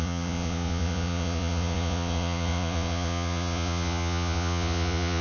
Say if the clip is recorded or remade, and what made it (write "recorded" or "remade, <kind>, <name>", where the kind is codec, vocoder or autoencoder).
remade, vocoder, Vocos